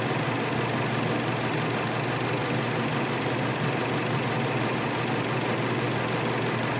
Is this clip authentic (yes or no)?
yes